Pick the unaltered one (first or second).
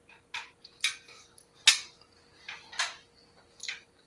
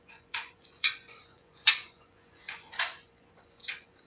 first